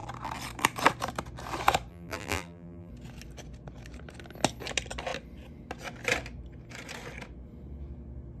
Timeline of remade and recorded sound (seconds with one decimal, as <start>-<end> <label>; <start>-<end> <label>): 0.0-1.9 recorded; 1.9-2.9 remade; 2.9-8.4 recorded